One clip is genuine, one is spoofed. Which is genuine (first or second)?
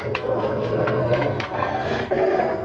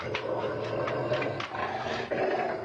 second